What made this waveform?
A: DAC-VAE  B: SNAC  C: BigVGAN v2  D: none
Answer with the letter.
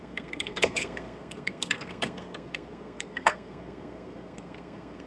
B